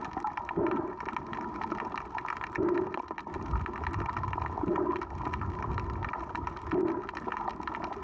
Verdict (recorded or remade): recorded